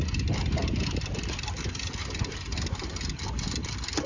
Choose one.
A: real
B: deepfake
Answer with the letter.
A